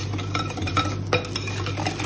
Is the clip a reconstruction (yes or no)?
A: no